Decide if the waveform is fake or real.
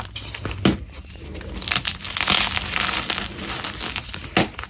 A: real